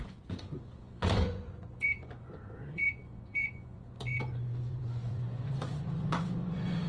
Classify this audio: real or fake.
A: fake